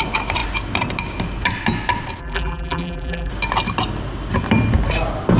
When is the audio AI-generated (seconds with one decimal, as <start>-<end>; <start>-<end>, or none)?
2.2-3.3